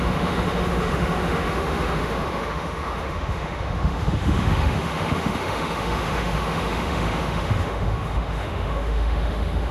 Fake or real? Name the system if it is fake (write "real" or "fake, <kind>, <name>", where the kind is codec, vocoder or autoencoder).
fake, autoencoder, DAC-VAE